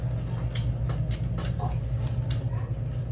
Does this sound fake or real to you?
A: real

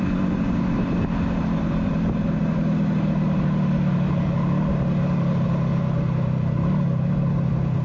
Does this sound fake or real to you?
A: real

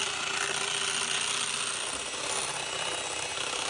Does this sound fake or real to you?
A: real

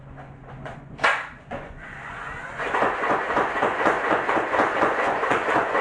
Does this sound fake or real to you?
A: fake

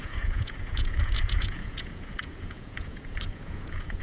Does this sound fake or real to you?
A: fake